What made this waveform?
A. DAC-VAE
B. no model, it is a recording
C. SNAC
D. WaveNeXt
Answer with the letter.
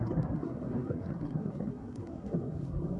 C